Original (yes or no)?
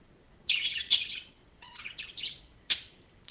no